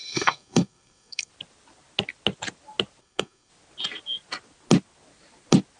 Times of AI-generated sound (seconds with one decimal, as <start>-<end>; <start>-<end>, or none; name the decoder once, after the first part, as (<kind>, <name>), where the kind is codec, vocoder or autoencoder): 0.0-1.3 (codec, SNAC); 3.0-3.5